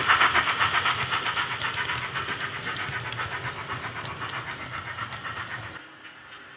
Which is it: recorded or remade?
recorded